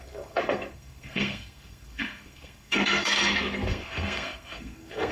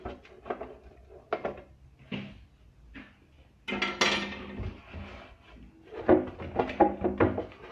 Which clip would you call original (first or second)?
second